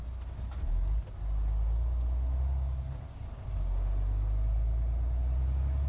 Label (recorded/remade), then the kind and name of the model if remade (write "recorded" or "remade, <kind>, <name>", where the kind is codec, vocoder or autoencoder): recorded